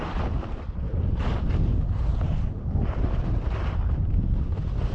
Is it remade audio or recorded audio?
recorded